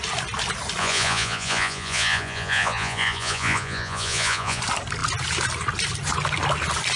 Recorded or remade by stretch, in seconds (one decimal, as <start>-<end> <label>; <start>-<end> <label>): 0.0-0.8 recorded; 0.8-4.6 remade; 4.6-7.0 recorded